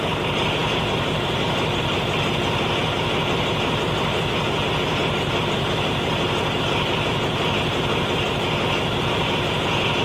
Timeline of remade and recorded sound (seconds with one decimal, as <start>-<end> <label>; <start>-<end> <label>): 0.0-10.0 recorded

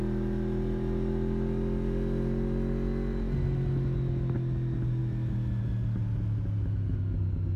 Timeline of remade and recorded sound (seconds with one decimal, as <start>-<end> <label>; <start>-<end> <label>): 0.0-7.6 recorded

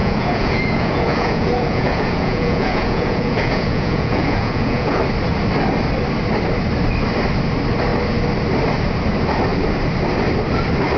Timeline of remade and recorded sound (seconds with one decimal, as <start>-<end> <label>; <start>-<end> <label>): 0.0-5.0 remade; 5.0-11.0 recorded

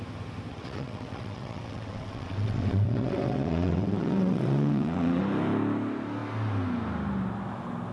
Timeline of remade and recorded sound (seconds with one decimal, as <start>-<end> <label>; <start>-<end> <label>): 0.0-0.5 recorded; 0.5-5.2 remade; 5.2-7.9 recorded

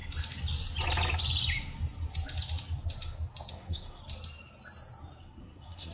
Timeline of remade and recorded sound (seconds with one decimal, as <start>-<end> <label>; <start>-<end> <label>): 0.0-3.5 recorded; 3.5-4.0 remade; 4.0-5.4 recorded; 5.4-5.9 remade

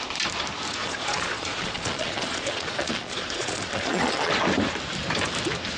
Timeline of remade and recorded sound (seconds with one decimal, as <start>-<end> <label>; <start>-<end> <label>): 0.0-0.8 recorded; 0.8-4.3 remade; 4.3-5.8 recorded

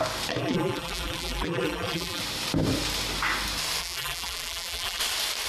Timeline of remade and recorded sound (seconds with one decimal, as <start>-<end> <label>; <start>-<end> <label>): 0.0-0.4 recorded; 0.4-2.2 remade; 2.2-3.8 recorded; 3.8-5.0 remade; 5.0-5.5 recorded